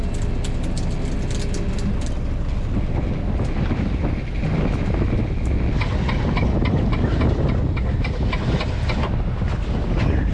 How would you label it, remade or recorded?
recorded